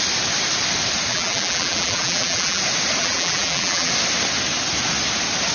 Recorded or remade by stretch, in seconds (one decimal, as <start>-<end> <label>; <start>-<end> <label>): 0.0-1.1 recorded; 1.1-2.6 remade; 2.6-3.0 recorded; 3.0-3.9 remade; 3.9-5.5 recorded